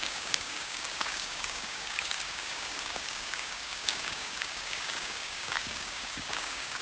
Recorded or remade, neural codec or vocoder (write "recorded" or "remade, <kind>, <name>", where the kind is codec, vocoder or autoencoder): remade, codec, DAC